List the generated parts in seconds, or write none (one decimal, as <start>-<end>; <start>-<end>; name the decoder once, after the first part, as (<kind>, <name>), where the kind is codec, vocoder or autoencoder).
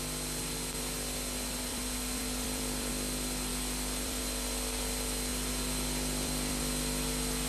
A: 1.7-2.9 (vocoder, BigVGAN v2); 3.5-4.2; 5.3-6.6